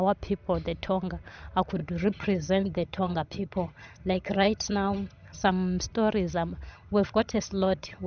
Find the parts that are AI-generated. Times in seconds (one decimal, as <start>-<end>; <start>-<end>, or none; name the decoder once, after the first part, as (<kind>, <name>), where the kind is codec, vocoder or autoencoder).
1.8-5.5 (vocoder, HiFi-GAN); 6.7-8.1